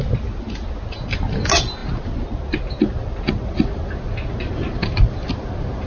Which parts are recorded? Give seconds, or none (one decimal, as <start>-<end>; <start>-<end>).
0.0-5.9